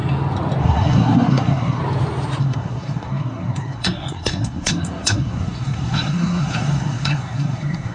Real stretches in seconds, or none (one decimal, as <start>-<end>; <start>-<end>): 0.0-0.6; 1.8-2.4